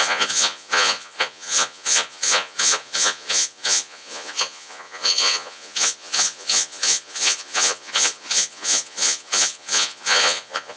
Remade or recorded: remade